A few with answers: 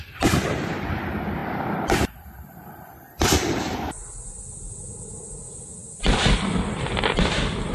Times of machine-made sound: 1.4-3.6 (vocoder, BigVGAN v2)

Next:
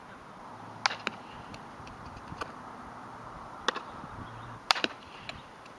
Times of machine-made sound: 1.1-5.8 (vocoder, BigVGAN v2)

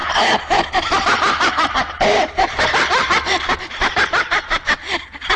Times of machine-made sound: 0.0-4.8 (vocoder, BigVGAN v2)